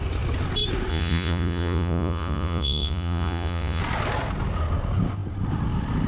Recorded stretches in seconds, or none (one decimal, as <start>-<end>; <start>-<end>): 0.0-0.9; 3.8-6.1